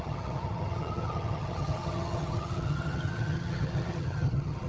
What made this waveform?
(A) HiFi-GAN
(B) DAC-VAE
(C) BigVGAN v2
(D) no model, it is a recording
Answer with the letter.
A